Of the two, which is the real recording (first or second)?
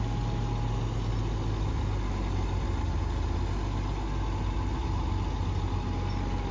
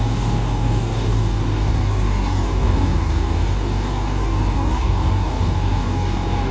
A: first